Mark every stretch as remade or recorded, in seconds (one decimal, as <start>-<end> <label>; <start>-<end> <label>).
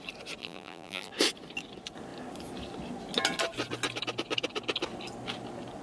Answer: 0.0-0.4 recorded; 0.4-1.1 remade; 1.1-5.8 recorded